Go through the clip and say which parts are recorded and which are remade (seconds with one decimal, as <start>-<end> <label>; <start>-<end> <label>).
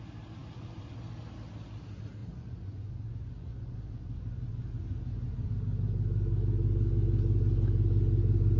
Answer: 0.0-2.2 recorded; 2.2-5.5 remade; 5.5-8.6 recorded